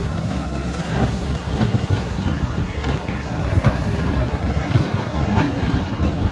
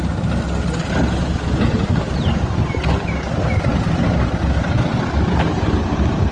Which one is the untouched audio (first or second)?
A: second